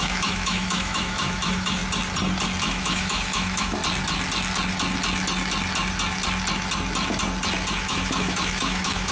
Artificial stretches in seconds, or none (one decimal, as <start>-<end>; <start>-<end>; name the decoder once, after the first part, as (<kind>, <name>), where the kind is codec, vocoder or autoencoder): 0.0-1.8 (autoencoder, DAC-VAE); 2.6-3.8; 7.8-9.1